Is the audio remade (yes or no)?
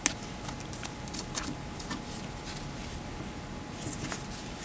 no